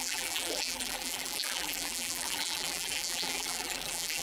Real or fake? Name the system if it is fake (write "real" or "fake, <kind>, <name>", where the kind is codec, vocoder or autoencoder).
fake, vocoder, BigVGAN v2